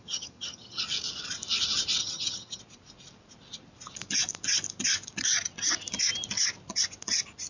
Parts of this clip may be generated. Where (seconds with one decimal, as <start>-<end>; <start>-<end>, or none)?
0.0-0.8; 2.0-2.6